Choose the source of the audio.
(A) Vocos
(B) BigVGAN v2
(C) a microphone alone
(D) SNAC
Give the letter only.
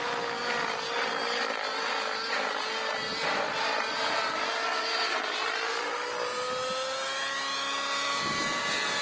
C